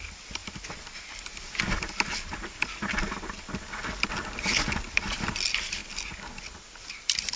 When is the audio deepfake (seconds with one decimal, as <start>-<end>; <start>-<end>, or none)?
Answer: none